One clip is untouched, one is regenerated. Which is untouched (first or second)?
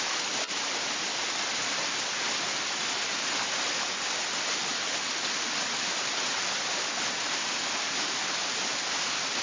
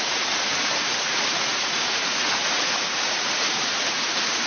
first